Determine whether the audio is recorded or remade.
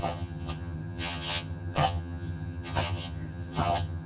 remade